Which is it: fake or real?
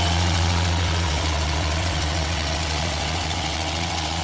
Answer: fake